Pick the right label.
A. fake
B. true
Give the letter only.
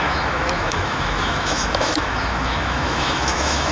A